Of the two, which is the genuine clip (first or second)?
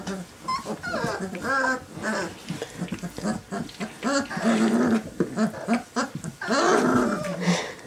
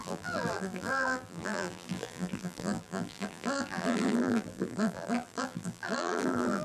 first